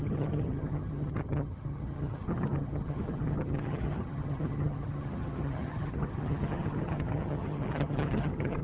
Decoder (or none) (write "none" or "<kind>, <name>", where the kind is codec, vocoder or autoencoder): vocoder, HiFi-GAN